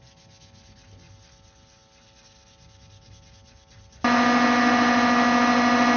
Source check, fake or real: real